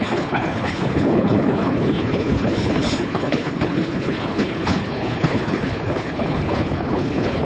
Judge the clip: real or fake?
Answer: fake